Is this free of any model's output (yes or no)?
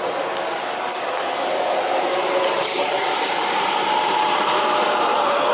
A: no